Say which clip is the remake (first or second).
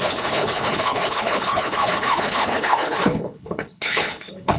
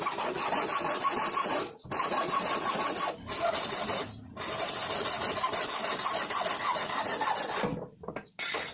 first